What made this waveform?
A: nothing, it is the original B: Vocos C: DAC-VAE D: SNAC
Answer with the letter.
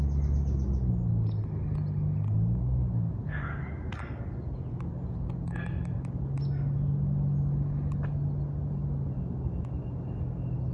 A